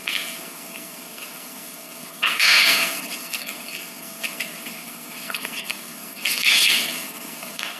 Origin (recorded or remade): remade